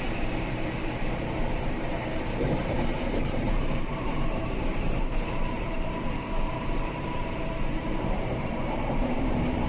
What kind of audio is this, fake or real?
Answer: fake